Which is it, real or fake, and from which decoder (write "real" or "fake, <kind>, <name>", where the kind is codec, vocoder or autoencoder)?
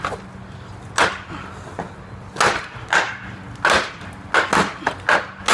real